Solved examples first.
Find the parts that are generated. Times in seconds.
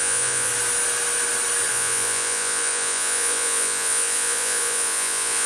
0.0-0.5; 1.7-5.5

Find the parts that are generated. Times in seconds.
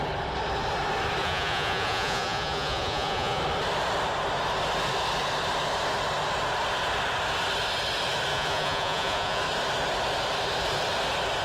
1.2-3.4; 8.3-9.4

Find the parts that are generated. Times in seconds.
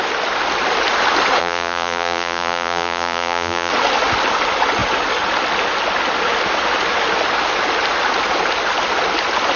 1.4-3.7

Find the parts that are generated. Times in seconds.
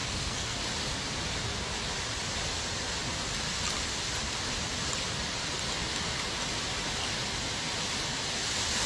0.0-0.6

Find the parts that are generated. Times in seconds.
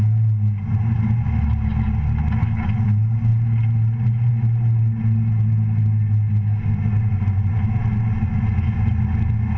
none